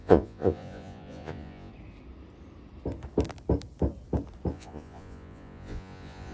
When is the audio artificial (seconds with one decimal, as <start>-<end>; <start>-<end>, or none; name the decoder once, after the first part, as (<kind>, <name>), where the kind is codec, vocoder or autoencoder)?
0.0-1.7 (vocoder, Vocos); 4.5-6.3